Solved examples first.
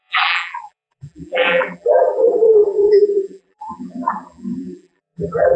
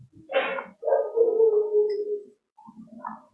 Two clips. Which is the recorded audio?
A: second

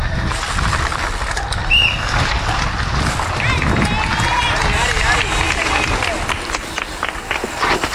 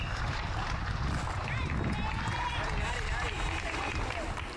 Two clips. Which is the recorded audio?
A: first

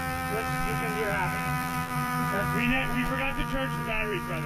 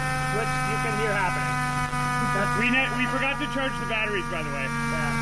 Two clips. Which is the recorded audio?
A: second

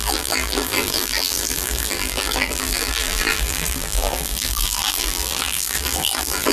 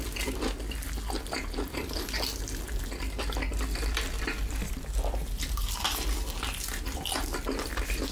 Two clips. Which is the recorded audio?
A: second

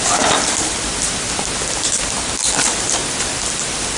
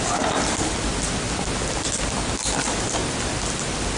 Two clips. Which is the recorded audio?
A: second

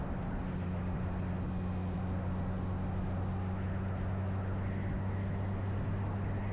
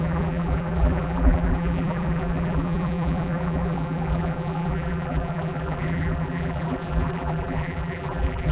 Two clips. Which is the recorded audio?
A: first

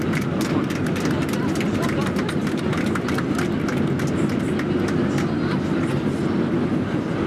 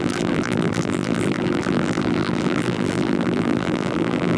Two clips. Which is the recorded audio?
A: first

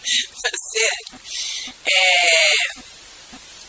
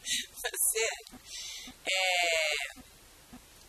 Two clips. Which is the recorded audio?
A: second